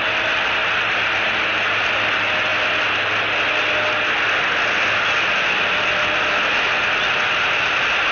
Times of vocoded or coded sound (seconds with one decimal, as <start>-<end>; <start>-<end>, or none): none